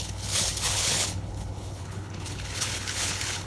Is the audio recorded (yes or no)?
no